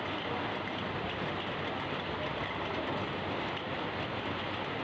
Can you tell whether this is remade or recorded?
recorded